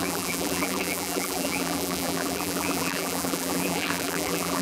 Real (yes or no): no